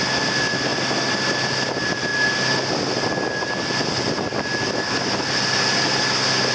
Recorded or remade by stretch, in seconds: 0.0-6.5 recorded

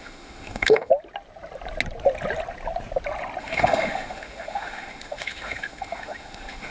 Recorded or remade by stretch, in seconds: 0.0-0.9 remade; 0.9-3.4 recorded; 3.4-6.7 remade

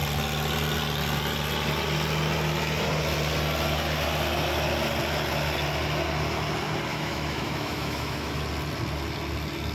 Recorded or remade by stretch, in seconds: 0.0-6.9 recorded; 6.9-8.4 remade; 8.4-9.7 recorded

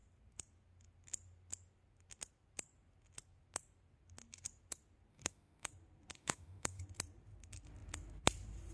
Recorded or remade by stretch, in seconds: 0.0-5.1 recorded; 5.1-5.7 remade; 5.7-6.2 recorded; 6.2-6.8 remade; 6.8-8.7 recorded

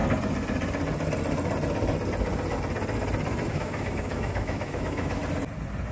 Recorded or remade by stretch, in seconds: 0.0-3.5 recorded; 3.5-5.2 remade; 5.2-5.9 recorded

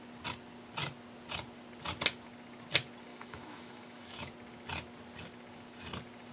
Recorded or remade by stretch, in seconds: 0.0-3.1 recorded; 3.1-4.3 remade; 4.3-6.3 recorded

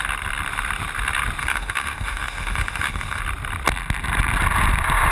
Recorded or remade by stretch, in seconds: 0.0-1.4 recorded; 1.4-3.2 remade; 3.2-5.1 recorded

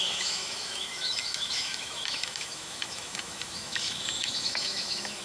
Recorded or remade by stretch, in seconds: 0.0-5.2 remade